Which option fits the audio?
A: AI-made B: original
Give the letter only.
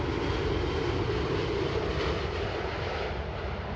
B